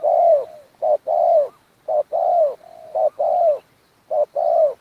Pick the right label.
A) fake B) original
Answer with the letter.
B